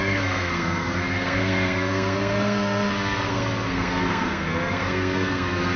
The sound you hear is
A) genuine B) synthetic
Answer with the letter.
B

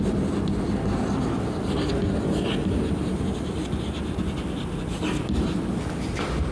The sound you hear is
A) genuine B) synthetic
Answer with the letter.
A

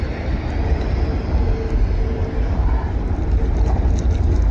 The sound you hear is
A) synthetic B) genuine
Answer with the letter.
B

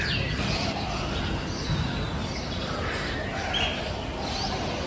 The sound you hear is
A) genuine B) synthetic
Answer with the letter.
A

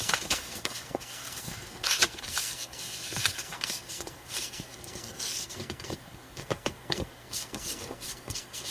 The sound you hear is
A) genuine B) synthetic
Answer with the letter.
B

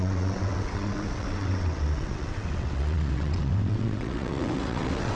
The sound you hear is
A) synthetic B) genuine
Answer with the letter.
A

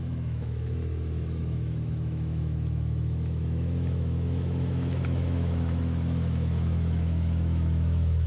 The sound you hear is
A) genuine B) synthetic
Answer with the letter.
B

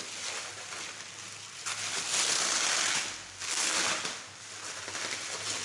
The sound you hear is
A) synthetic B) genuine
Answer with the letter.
B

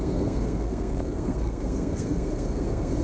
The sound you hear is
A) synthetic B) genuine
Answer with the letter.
A